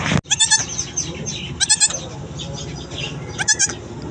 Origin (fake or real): real